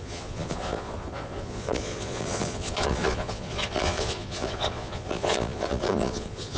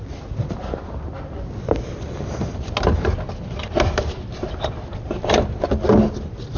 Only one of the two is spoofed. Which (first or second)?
first